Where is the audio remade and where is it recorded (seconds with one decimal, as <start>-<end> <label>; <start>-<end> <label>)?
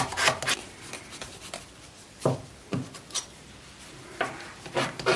0.0-1.2 recorded; 1.2-4.3 remade; 4.3-5.2 recorded